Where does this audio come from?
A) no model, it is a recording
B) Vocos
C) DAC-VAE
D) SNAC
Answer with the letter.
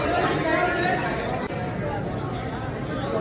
A